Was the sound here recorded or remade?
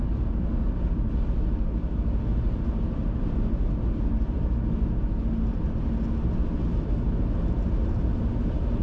recorded